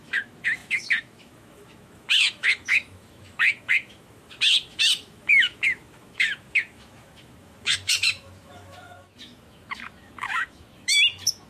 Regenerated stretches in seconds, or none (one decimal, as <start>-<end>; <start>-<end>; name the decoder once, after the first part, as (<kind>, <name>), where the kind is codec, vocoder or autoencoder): 0.0-11.5 (autoencoder, DAC-VAE)